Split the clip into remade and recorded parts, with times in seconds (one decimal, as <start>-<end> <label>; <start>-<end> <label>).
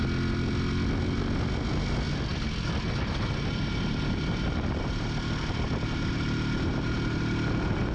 0.0-7.9 recorded